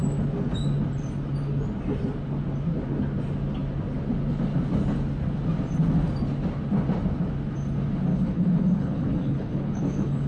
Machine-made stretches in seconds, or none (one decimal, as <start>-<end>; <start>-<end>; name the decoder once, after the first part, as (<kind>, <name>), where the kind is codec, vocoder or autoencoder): 8.1-10.3 (codec, HILCodec)